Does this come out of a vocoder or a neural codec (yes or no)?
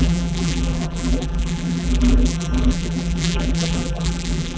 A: yes